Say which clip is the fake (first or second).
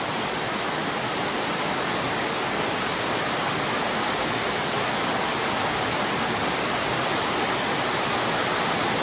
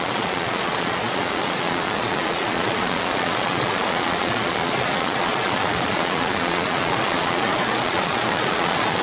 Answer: second